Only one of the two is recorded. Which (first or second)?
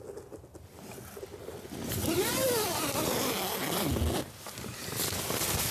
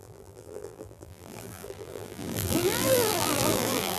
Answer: first